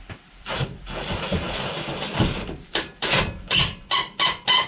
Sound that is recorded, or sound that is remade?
remade